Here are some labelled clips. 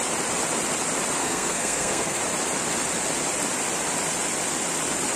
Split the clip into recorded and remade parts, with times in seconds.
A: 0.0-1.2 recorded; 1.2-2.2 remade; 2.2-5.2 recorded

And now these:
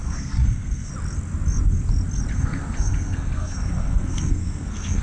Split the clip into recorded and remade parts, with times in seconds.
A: 0.0-0.9 remade; 0.9-2.3 recorded; 2.3-5.0 remade